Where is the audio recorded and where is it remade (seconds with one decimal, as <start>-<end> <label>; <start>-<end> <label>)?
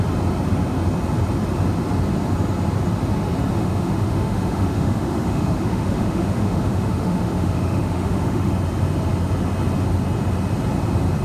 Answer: 0.0-3.6 recorded; 3.6-8.5 remade; 8.5-11.2 recorded